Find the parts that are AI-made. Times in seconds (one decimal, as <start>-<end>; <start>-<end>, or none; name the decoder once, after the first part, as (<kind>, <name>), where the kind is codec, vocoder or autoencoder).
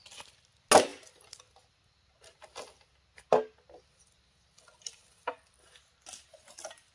none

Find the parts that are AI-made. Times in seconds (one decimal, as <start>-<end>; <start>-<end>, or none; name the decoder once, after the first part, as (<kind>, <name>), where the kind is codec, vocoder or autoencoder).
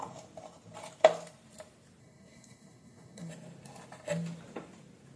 2.0-3.3 (codec, SNAC)